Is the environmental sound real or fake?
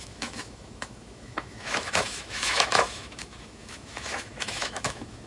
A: fake